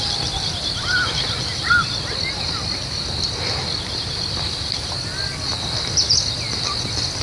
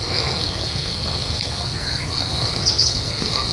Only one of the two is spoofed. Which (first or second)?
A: second